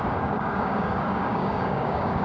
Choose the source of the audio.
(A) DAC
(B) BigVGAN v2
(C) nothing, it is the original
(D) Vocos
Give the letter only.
A